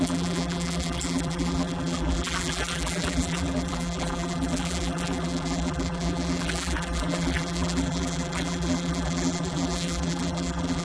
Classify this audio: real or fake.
fake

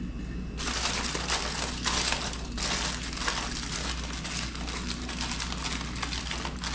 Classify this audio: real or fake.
real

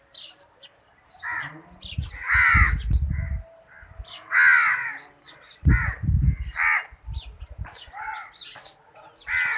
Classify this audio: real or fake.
real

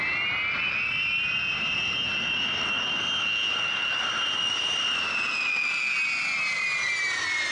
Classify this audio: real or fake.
real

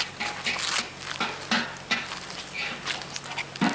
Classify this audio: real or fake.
real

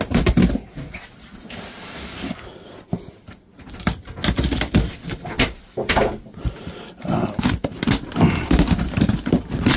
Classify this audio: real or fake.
real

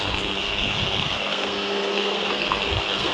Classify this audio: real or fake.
fake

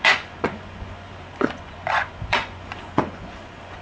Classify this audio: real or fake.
fake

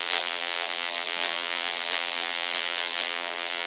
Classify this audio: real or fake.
fake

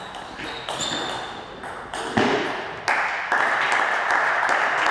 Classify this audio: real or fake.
real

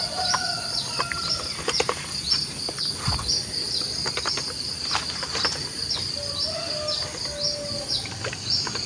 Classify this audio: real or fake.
real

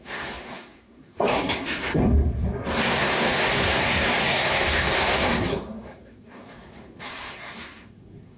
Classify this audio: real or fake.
fake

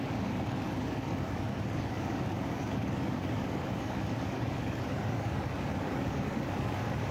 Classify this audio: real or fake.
fake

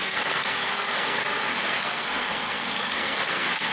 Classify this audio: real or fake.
fake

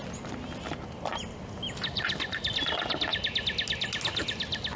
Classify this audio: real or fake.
real